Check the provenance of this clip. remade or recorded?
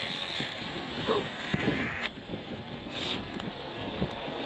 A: remade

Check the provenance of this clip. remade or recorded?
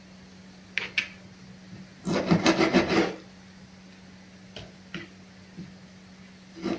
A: recorded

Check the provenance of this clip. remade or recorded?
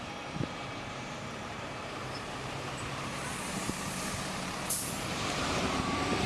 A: remade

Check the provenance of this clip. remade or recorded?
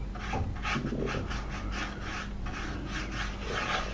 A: recorded